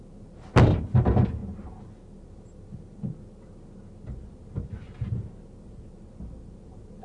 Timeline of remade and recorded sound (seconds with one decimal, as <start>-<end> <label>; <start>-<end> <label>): 0.0-7.0 recorded